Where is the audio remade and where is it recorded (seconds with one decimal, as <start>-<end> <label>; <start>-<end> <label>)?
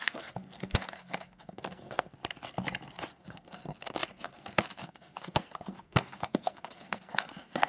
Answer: 0.0-2.2 remade; 2.2-3.1 recorded; 3.1-7.7 remade